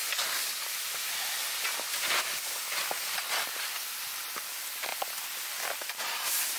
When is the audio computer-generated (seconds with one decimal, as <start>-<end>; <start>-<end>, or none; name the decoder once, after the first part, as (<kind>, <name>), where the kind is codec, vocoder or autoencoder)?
4.0-4.9 (vocoder, BigVGAN v2); 5.9-6.6